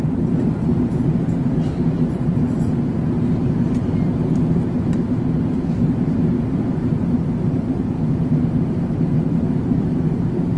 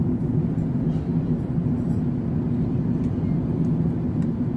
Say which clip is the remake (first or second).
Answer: first